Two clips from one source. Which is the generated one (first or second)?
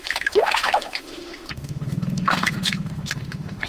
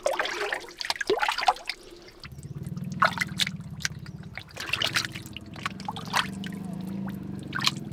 first